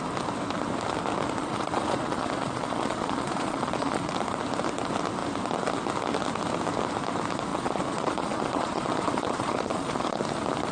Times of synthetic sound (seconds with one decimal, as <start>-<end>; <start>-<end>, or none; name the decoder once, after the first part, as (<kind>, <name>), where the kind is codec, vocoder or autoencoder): 1.4-4.1 (vocoder, Vocos); 7.5-10.2